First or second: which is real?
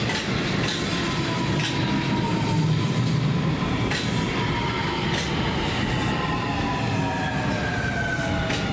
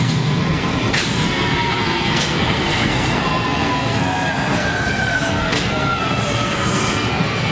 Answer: first